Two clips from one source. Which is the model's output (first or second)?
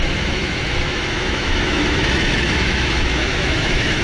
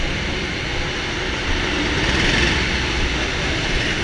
first